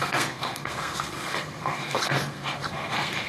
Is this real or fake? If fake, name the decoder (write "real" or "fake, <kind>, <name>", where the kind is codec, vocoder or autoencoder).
fake, codec, SNAC